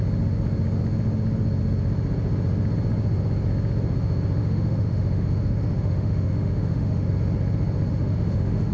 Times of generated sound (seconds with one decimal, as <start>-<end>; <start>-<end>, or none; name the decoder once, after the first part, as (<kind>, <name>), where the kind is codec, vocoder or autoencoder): 4.4-7.1 (autoencoder, DAC-VAE); 7.9-8.7